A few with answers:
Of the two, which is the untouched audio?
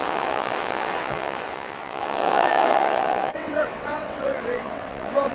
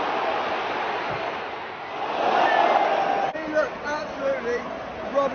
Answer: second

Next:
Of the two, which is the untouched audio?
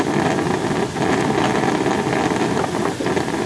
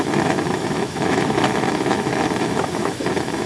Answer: first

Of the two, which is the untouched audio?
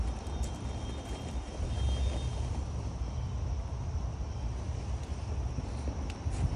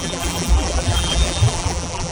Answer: first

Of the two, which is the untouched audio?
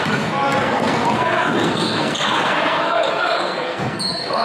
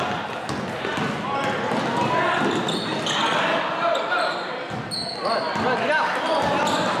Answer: second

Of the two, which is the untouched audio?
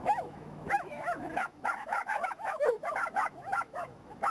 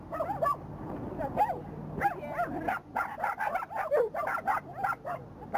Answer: second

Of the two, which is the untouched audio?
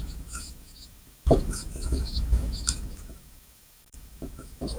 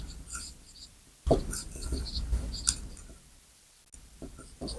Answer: second